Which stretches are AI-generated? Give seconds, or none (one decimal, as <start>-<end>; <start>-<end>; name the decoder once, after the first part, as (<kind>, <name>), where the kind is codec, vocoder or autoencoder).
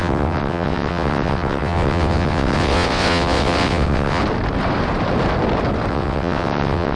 0.0-4.2 (vocoder, WaveNeXt); 5.9-7.0